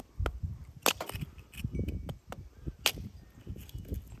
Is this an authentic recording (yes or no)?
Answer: yes